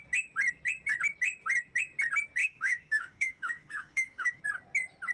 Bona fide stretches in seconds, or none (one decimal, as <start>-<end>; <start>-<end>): 0.0-2.4; 4.4-5.1